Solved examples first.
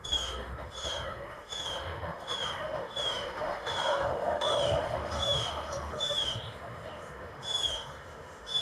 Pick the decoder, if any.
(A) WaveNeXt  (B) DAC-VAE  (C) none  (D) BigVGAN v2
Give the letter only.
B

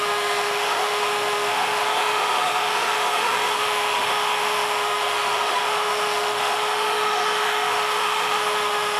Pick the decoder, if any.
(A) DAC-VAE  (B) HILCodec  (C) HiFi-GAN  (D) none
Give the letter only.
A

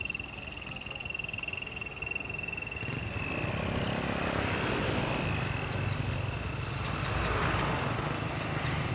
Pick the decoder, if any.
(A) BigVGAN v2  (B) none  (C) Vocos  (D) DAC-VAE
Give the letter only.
B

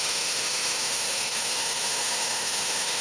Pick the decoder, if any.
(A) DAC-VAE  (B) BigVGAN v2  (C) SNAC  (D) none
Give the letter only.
A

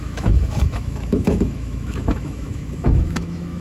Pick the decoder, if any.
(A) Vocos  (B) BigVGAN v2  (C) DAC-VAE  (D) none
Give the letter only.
C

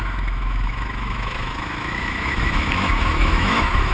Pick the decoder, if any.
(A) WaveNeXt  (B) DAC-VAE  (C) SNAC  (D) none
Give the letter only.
B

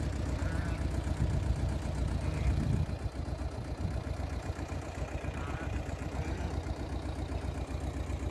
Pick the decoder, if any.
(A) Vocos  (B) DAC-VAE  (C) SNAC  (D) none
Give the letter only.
D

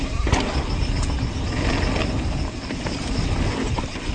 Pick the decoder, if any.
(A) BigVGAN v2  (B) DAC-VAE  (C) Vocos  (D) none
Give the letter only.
D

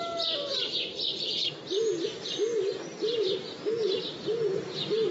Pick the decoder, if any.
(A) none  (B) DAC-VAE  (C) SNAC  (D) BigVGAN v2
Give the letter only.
A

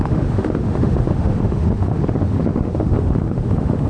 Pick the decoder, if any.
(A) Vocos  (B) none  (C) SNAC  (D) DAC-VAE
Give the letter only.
D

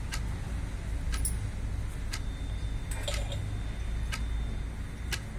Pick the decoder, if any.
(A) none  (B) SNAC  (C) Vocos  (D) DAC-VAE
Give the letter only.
A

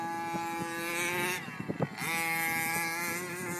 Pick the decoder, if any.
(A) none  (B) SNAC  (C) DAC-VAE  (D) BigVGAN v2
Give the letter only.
A